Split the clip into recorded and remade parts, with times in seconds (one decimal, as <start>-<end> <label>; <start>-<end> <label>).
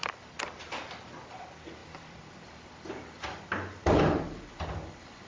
0.0-1.8 recorded; 1.8-5.3 remade